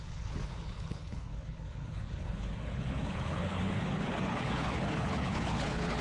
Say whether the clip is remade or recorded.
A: remade